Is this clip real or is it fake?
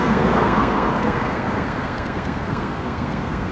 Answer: fake